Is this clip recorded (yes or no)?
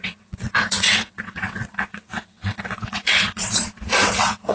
no